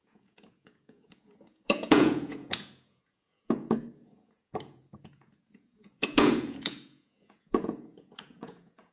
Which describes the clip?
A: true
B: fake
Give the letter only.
B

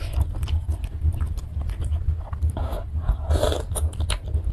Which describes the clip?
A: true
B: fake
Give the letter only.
A